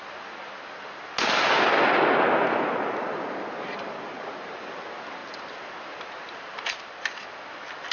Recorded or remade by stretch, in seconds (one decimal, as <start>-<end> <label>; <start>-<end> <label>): 0.0-7.9 recorded